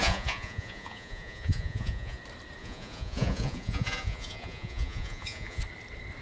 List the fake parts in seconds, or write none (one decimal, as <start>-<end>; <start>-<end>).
0.0-2.2; 2.6-5.6